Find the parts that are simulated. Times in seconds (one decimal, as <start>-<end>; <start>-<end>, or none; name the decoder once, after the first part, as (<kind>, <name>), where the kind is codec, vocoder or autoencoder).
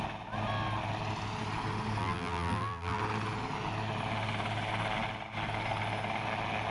2.0-3.0 (vocoder, BigVGAN v2)